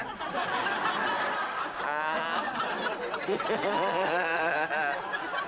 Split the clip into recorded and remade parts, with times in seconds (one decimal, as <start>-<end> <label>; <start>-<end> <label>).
0.0-1.4 recorded; 1.4-2.6 remade; 2.6-5.5 recorded